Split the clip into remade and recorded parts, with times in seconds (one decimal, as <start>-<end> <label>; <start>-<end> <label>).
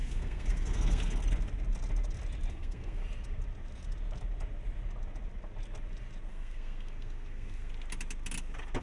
0.0-1.2 remade; 1.2-2.5 recorded; 2.5-3.0 remade; 3.0-6.3 recorded; 6.3-7.7 remade; 7.7-8.8 recorded